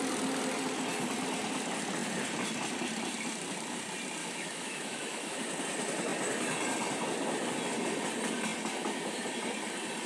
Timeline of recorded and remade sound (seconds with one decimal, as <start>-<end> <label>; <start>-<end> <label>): 0.0-4.2 recorded; 4.2-5.4 remade; 5.4-10.1 recorded